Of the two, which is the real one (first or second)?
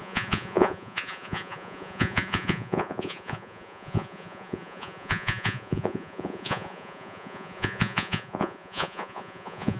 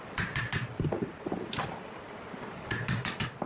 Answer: second